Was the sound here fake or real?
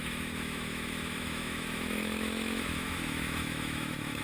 fake